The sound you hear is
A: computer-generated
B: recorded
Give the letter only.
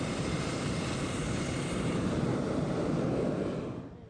B